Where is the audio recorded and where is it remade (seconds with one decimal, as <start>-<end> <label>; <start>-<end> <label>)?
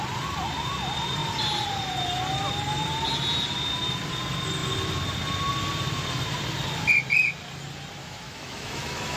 0.0-8.0 recorded; 8.0-9.2 remade